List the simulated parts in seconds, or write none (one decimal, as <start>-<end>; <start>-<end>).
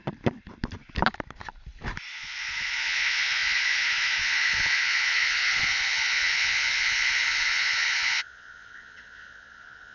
2.1-9.9